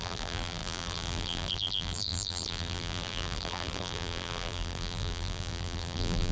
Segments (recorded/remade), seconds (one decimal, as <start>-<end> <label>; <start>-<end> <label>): 0.0-6.3 remade